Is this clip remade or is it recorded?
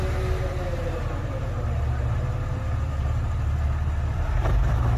remade